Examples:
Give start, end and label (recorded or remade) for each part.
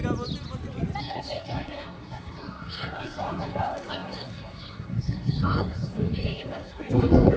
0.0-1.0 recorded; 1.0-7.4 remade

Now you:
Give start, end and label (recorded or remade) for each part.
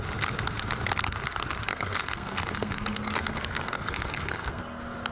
0.0-1.7 recorded; 1.7-4.6 remade; 4.6-5.1 recorded